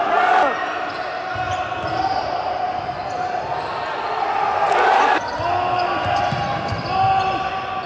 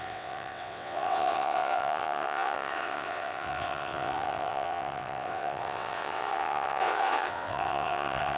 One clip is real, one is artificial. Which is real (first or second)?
first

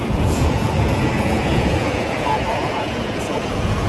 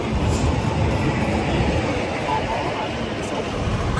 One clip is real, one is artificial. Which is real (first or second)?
second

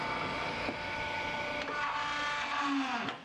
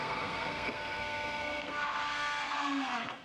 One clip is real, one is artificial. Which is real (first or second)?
first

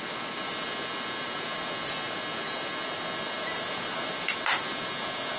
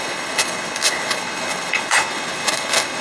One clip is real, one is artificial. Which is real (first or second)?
first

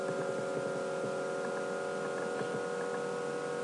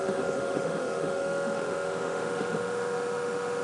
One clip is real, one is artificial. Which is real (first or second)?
first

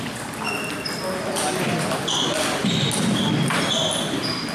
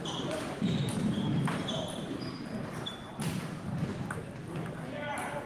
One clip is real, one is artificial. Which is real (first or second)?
first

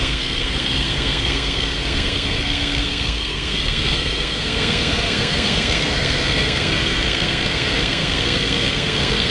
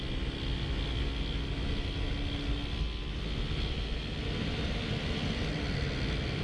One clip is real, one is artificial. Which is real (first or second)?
second